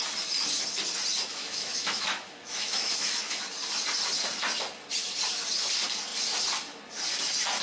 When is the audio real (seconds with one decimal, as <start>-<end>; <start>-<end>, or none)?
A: 0.0-1.3; 3.4-7.6